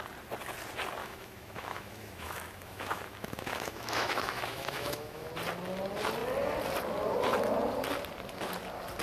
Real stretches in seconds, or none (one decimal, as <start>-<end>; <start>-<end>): 0.0-1.0; 5.3-9.0